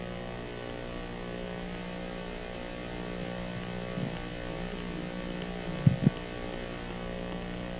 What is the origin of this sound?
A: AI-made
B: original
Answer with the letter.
B